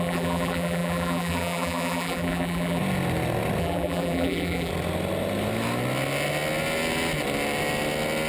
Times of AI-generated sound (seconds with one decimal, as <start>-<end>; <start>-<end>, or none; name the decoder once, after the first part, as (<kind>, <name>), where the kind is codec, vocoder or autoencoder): 0.0-2.8 (vocoder, BigVGAN v2); 3.6-4.7